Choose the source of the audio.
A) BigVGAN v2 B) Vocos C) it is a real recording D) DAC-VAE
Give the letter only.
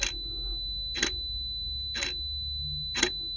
C